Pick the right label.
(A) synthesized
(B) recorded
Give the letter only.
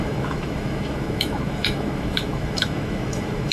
A